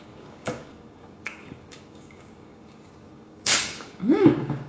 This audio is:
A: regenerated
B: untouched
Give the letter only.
A